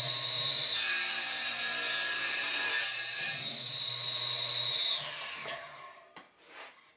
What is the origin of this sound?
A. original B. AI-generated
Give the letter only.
B